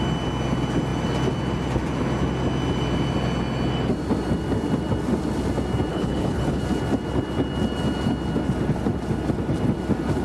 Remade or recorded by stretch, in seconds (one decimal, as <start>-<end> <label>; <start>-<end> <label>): 0.0-5.9 recorded; 5.9-6.6 remade; 6.6-10.2 recorded